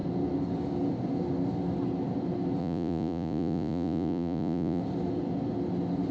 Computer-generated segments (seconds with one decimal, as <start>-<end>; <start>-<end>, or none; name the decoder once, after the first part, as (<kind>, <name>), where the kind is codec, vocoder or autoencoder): 2.6-4.8 (vocoder, Vocos)